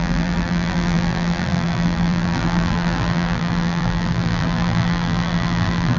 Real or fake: fake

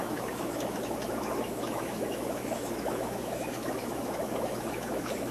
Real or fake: fake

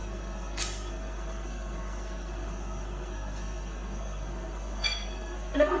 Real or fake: fake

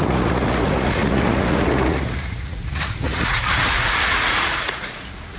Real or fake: fake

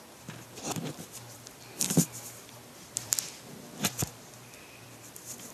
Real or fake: fake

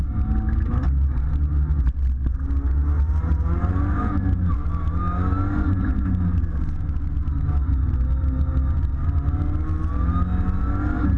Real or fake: real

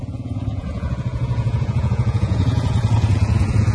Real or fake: fake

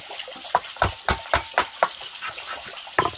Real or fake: fake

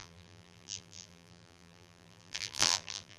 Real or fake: fake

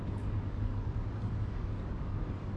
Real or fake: fake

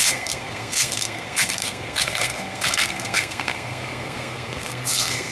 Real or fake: fake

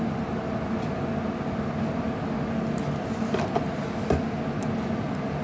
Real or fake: real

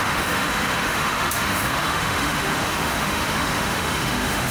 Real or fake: fake